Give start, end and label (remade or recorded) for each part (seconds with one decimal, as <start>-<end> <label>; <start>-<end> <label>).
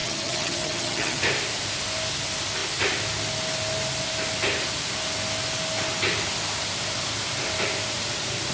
0.0-1.2 remade; 1.2-8.5 recorded